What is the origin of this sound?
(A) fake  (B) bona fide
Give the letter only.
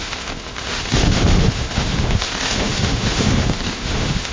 A